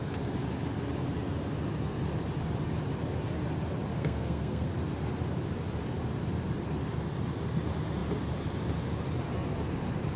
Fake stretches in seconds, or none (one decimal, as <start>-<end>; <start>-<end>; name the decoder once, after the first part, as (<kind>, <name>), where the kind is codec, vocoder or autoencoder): 3.9-4.7 (codec, SNAC)